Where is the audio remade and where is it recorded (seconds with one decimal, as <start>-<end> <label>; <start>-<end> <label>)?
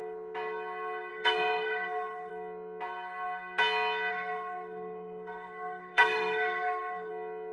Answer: 0.0-1.1 recorded; 1.1-2.3 remade; 2.3-4.1 recorded; 4.1-7.1 remade; 7.1-7.5 recorded